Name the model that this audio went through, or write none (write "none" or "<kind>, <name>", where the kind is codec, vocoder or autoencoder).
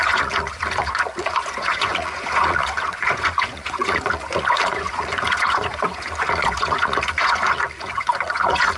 vocoder, Vocos